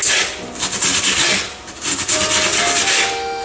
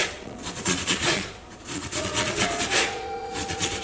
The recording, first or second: first